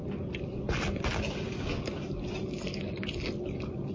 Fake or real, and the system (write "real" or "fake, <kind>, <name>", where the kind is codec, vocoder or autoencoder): real